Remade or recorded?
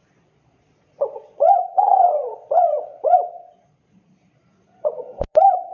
remade